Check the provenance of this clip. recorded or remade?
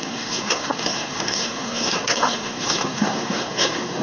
remade